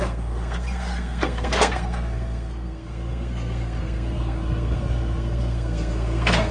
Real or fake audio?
fake